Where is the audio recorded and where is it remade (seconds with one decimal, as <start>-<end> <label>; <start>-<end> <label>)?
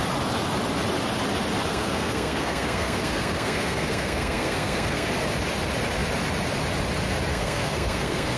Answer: 0.0-1.7 recorded; 1.7-5.1 remade; 5.1-7.3 recorded; 7.3-8.4 remade